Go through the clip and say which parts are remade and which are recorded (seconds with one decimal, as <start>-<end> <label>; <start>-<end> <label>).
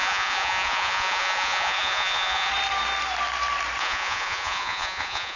0.0-2.5 remade; 2.5-3.8 recorded; 3.8-5.4 remade